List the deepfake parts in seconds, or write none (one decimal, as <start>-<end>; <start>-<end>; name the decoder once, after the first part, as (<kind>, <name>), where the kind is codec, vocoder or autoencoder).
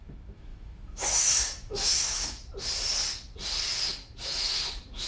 0.0-2.4 (autoencoder, DAC-VAE); 3.8-5.1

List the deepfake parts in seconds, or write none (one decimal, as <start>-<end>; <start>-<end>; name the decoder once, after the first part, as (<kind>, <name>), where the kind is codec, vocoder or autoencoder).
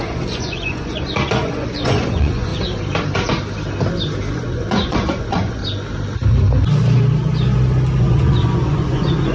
0.0-2.5 (vocoder, Vocos); 4.3-5.6; 8.0-9.3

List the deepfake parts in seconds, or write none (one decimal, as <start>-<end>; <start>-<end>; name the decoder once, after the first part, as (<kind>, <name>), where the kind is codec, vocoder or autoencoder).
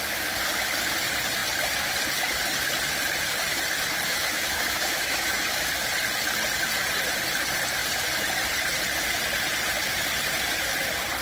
4.1-5.7 (autoencoder, DAC-VAE)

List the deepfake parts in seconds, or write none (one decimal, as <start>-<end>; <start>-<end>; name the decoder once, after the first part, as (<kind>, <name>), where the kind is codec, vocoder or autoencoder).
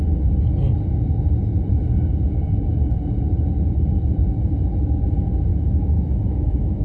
5.5-6.8 (autoencoder, DAC-VAE)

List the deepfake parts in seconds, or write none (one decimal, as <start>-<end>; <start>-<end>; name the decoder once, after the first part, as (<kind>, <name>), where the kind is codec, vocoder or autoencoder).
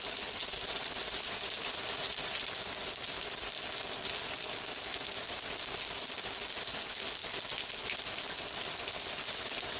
none